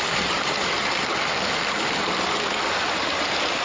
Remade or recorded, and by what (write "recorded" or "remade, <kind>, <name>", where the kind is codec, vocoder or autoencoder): recorded